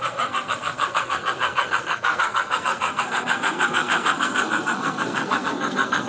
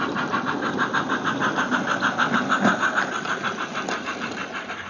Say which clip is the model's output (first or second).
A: first